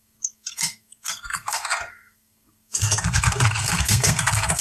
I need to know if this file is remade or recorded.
remade